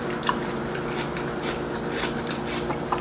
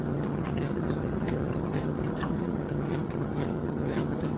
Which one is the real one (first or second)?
first